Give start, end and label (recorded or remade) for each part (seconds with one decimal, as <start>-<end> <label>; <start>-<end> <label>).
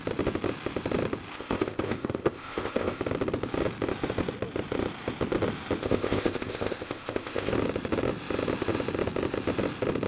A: 0.0-1.3 recorded; 1.3-3.0 remade; 3.0-5.8 recorded; 5.8-7.5 remade; 7.5-10.1 recorded